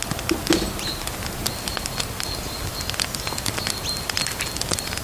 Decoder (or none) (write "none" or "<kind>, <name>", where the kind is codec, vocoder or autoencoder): none